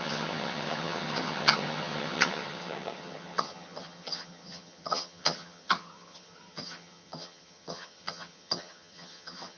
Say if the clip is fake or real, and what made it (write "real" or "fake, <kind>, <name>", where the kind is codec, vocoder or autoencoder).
fake, vocoder, HiFi-GAN